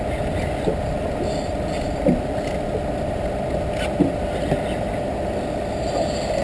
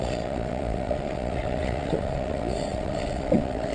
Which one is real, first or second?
first